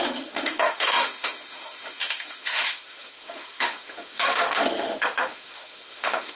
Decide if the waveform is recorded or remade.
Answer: remade